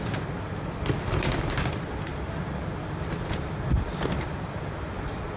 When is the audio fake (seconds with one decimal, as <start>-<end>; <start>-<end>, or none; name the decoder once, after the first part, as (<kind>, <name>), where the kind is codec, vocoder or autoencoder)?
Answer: none